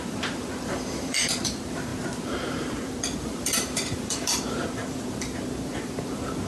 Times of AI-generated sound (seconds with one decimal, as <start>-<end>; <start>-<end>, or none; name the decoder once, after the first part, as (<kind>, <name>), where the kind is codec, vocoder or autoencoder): 0.0-6.5 (vocoder, BigVGAN v2)